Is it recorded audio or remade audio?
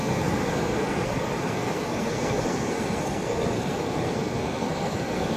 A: remade